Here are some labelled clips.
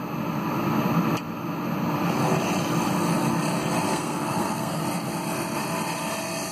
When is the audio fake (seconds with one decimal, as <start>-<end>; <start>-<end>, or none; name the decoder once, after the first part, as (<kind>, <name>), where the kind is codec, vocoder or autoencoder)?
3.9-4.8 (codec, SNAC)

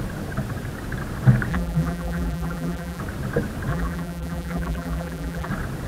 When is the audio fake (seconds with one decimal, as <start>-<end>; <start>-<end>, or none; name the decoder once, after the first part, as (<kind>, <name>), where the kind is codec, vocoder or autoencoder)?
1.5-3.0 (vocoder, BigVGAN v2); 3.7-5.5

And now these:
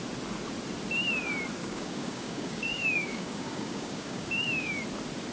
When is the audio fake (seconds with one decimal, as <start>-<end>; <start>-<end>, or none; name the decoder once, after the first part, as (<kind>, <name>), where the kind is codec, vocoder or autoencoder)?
1.6-4.8 (codec, DAC)